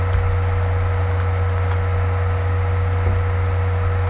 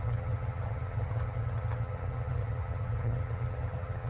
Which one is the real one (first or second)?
first